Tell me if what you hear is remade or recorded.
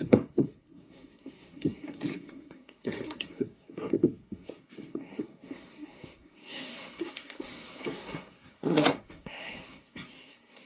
remade